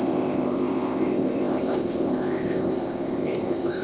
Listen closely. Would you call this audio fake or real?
fake